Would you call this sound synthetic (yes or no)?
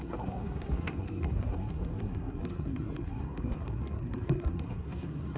yes